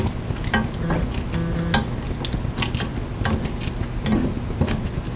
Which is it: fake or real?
real